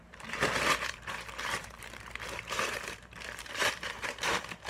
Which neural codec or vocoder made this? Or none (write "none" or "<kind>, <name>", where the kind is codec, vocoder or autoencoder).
vocoder, BigVGAN v2